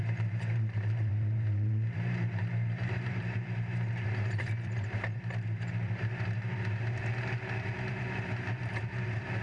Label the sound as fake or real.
fake